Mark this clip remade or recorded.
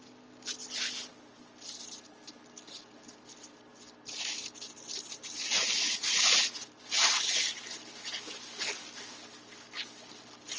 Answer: recorded